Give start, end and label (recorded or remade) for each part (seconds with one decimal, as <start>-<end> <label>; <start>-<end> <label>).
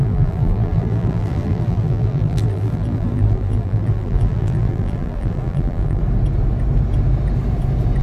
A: 0.0-6.0 remade; 6.0-8.0 recorded